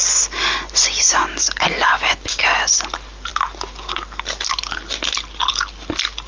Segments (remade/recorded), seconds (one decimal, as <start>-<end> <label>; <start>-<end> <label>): 0.0-6.3 recorded

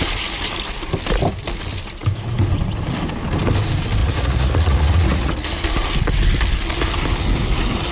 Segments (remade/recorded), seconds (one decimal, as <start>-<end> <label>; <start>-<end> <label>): 0.0-4.0 recorded; 4.0-5.3 remade; 5.3-7.9 recorded

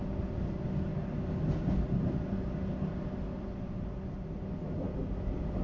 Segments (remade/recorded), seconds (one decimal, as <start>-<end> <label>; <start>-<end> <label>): 0.0-5.6 recorded

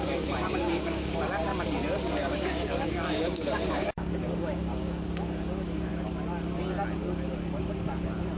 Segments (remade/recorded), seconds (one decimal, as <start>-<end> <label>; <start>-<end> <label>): 0.0-1.5 remade; 1.5-2.3 recorded; 2.3-5.9 remade; 5.9-8.4 recorded

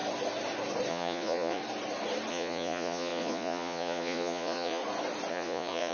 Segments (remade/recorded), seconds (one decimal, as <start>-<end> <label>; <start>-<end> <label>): 0.0-0.9 recorded; 0.9-1.6 remade; 1.6-2.3 recorded; 2.3-4.8 remade; 4.8-5.3 recorded; 5.3-5.9 remade

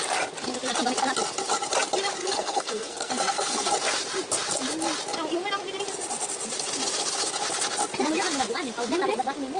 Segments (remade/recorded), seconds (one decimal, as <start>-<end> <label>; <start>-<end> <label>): 0.0-2.2 recorded; 2.2-3.7 remade; 3.7-9.6 recorded